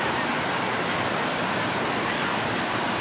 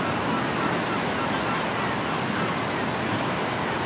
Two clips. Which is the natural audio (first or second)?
second